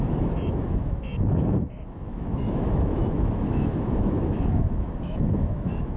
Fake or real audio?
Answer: fake